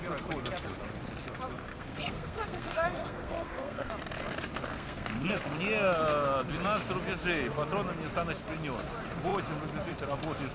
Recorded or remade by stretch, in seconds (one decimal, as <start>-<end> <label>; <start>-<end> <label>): 0.0-1.7 recorded; 1.7-3.9 remade; 3.9-4.7 recorded; 4.7-5.3 remade; 5.3-10.5 recorded